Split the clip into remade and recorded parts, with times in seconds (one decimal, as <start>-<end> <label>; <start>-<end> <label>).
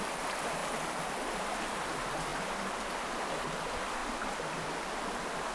0.0-5.5 recorded